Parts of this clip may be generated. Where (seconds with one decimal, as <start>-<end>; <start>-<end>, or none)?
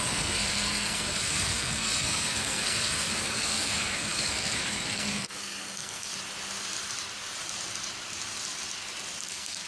0.0-6.1; 9.2-9.7